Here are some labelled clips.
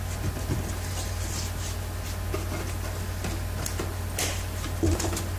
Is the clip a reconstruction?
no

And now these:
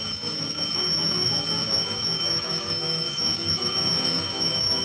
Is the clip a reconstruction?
yes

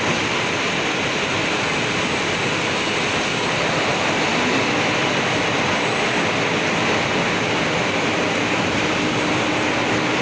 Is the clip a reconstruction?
no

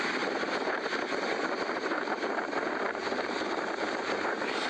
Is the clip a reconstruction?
yes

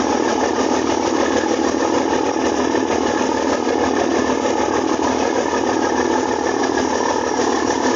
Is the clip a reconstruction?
no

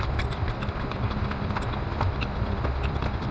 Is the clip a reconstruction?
yes